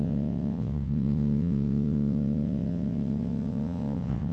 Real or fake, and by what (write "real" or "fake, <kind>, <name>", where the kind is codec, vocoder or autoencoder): fake, vocoder, WaveNeXt